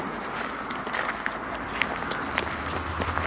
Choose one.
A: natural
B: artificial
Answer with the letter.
A